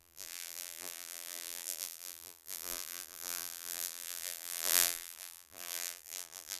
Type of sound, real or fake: fake